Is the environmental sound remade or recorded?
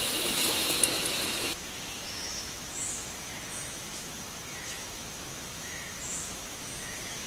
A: remade